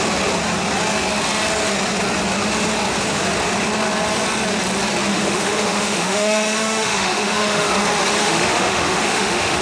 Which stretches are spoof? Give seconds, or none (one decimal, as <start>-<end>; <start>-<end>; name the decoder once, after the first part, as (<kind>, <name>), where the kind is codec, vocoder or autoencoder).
5.1-7.7 (autoencoder, DAC-VAE); 8.2-9.6